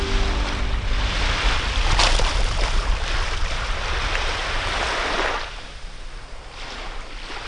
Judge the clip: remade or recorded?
recorded